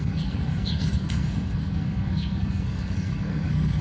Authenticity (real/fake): fake